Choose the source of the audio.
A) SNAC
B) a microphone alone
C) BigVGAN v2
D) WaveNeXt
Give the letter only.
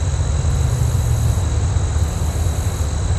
B